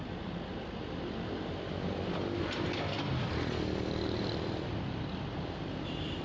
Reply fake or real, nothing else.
fake